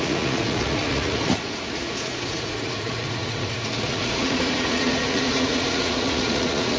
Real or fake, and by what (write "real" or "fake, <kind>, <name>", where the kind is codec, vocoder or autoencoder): fake, vocoder, Vocos